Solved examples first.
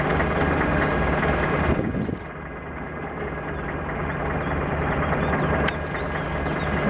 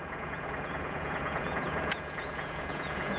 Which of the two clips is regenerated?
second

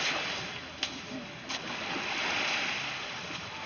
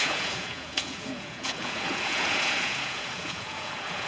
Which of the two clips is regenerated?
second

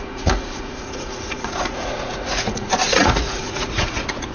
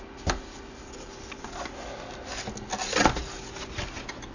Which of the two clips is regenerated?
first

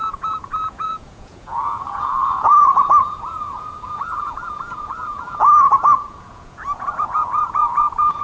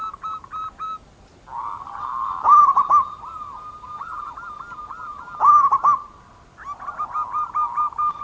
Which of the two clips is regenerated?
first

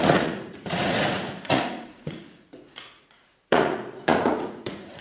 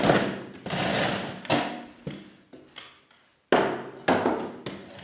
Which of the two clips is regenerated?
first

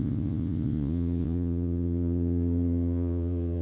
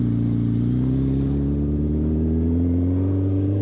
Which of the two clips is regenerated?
first